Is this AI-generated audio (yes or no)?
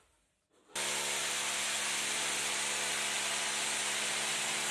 no